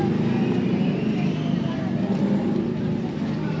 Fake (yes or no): no